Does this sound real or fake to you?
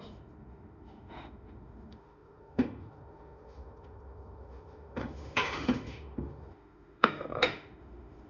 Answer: fake